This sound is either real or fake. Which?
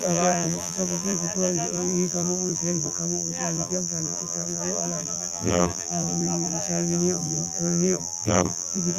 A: fake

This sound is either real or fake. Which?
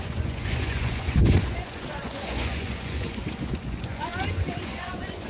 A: fake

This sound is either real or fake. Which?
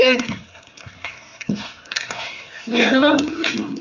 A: fake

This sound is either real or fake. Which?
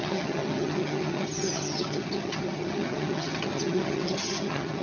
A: fake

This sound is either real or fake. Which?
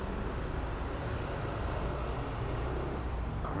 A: real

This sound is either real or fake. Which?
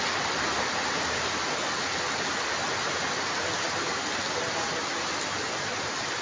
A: real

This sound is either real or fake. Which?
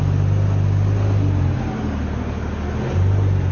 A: real